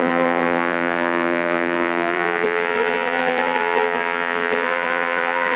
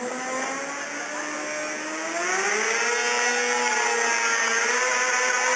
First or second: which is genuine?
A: second